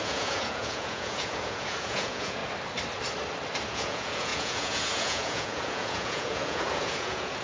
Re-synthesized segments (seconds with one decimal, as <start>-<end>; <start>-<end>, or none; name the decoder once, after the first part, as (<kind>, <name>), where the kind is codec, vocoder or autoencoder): 0.0-2.4 (vocoder, Vocos); 3.7-7.4